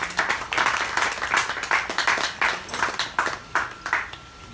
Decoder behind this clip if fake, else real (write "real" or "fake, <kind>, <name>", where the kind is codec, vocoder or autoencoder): real